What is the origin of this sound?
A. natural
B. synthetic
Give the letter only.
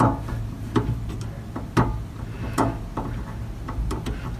A